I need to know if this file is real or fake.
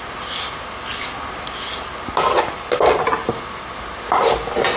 real